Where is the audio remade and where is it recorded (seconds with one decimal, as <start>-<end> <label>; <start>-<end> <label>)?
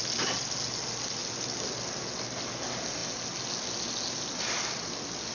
0.0-5.3 recorded